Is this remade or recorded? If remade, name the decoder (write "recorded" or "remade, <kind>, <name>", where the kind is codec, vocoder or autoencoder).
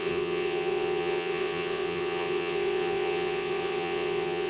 remade, vocoder, WaveNeXt